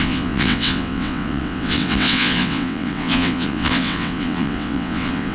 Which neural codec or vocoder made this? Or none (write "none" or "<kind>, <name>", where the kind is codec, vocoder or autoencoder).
vocoder, WaveNeXt